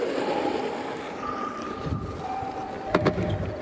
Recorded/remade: recorded